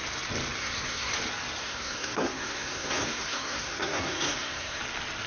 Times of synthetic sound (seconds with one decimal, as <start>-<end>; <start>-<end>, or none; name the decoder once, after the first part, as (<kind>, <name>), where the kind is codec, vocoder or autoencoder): 0.6-1.1 (codec, SNAC); 1.6-4.8